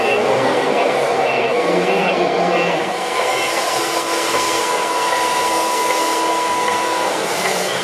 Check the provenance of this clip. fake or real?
fake